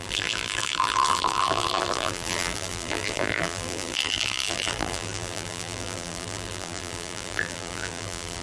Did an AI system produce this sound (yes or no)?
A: yes